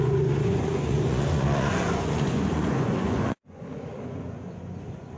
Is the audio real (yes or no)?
no